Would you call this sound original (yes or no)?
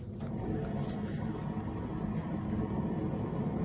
yes